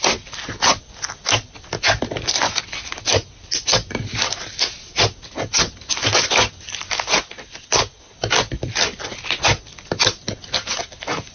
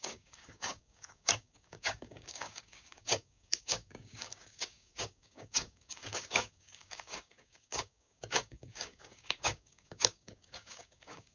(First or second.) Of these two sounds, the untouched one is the first